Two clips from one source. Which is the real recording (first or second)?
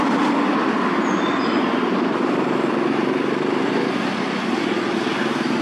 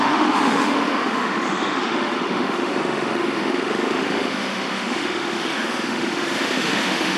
first